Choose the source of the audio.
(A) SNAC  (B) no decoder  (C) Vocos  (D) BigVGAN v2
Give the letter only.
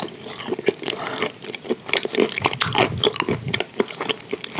B